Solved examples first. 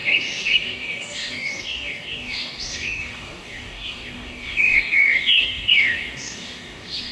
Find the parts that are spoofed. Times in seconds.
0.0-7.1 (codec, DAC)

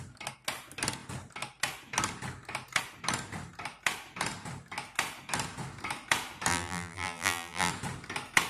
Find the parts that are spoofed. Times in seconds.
6.5-7.7 (vocoder, BigVGAN v2)

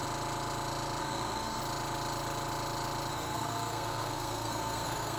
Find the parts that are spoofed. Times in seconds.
1.0-1.6 (codec, SNAC); 3.1-5.2